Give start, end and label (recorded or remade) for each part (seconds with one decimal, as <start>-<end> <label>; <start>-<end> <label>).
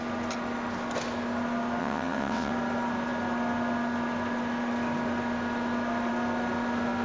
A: 0.0-1.8 recorded; 1.8-2.5 remade; 2.5-7.0 recorded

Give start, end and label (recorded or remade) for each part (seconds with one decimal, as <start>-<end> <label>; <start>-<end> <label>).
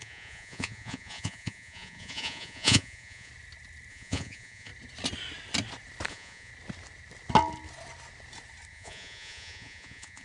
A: 0.0-3.3 remade; 3.3-3.9 recorded; 3.9-4.7 remade; 4.7-6.1 recorded; 6.1-6.5 remade; 6.5-8.7 recorded; 8.7-10.2 remade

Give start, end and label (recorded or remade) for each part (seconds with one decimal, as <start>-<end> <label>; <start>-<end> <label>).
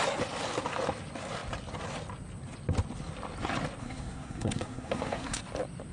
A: 0.0-3.8 recorded; 3.8-5.4 remade; 5.4-5.9 recorded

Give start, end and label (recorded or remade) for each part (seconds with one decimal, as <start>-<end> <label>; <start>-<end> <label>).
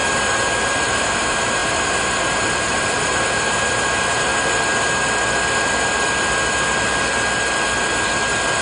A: 0.0-0.6 recorded; 0.6-4.3 remade; 4.3-8.6 recorded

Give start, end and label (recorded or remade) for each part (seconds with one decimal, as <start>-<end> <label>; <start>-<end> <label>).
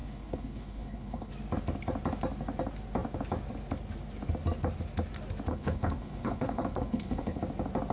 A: 0.0-1.3 remade; 1.3-5.5 recorded; 5.5-7.4 remade; 7.4-7.9 recorded